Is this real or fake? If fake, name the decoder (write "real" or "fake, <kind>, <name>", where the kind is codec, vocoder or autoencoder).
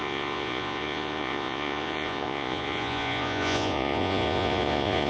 fake, vocoder, Vocos